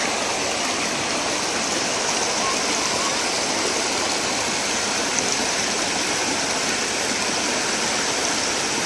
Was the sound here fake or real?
real